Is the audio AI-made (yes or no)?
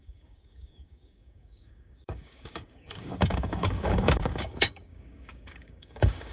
yes